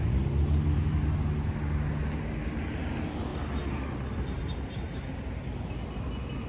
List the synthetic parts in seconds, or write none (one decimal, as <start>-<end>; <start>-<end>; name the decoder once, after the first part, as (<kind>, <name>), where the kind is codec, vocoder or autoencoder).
none